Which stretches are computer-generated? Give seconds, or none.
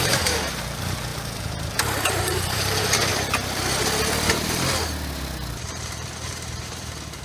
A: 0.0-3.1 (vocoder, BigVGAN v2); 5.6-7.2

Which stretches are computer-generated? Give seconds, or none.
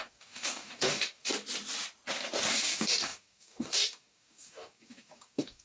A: 0.0-1.3 (codec, DAC); 2.5-5.6